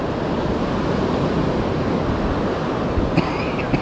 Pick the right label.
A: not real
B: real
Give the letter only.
B